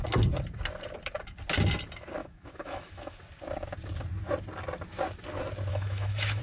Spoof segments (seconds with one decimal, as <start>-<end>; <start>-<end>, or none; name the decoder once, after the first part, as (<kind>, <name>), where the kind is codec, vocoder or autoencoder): 2.2-3.2 (autoencoder, DAC-VAE); 5.7-6.4